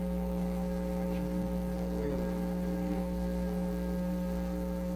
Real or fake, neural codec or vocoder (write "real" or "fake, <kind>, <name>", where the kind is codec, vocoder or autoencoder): fake, codec, SNAC